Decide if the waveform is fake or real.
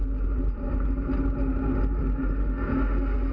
real